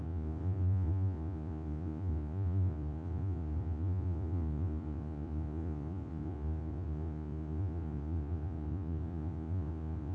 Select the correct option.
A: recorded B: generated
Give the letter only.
B